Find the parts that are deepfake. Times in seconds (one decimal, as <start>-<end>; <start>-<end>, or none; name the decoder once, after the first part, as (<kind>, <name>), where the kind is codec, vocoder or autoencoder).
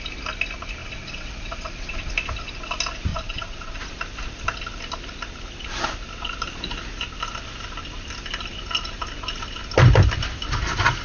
0.8-2.1 (vocoder, WaveNeXt); 3.1-3.8